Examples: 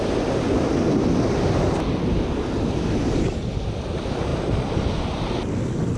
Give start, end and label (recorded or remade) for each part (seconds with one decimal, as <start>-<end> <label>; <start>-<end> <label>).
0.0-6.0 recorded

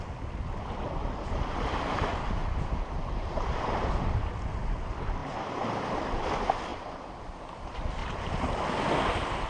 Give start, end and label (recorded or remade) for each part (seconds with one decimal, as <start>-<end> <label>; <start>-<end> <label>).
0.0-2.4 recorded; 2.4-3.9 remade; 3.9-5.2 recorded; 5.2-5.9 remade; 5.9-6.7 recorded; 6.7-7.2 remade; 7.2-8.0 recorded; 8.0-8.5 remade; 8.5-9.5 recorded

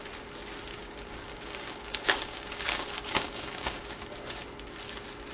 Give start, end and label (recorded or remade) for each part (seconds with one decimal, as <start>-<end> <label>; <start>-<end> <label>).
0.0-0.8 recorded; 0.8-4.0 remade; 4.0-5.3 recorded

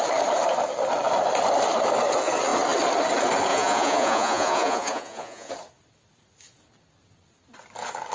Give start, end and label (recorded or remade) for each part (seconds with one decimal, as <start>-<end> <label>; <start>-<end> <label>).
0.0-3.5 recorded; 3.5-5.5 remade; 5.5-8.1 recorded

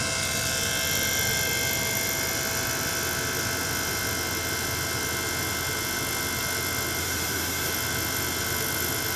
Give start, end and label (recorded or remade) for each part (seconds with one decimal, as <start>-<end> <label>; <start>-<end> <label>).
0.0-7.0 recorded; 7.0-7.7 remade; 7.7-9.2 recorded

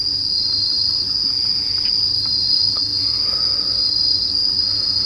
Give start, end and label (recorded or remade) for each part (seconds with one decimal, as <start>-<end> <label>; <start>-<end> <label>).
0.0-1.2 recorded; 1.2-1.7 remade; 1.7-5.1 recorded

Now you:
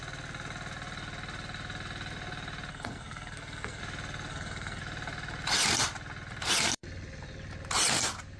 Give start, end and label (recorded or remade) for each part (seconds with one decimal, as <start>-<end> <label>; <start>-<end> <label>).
0.0-2.7 recorded; 2.7-3.8 remade; 3.8-4.3 recorded; 4.3-4.8 remade; 4.8-8.4 recorded

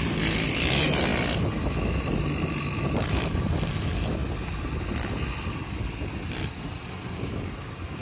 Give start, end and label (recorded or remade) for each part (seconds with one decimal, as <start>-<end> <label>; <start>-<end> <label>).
0.0-8.0 recorded